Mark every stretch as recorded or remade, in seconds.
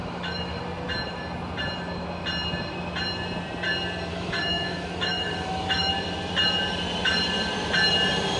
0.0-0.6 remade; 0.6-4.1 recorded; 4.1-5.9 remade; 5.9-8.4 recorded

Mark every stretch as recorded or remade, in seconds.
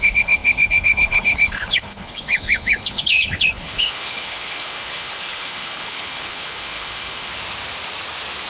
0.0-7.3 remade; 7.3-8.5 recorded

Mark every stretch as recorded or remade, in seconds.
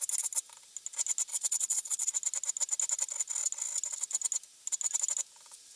0.0-1.3 recorded; 1.3-2.1 remade; 2.1-5.8 recorded